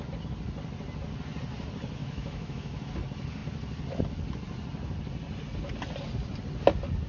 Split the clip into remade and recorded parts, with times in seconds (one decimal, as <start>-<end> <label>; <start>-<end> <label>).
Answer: 0.0-2.0 recorded; 2.0-2.9 remade; 2.9-7.1 recorded